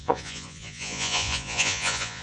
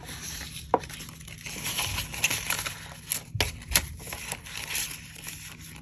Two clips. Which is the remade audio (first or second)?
first